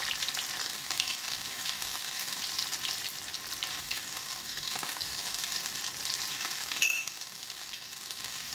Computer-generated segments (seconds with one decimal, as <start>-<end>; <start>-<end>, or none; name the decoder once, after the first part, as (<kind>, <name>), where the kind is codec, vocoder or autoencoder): 0.6-2.4 (codec, DAC); 3.7-5.8; 6.3-8.5